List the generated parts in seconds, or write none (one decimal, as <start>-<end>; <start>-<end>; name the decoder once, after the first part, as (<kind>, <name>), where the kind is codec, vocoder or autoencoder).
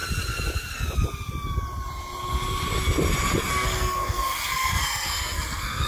3.5-5.9 (codec, SNAC)